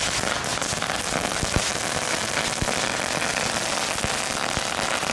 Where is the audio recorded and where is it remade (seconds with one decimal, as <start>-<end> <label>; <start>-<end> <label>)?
0.0-5.1 recorded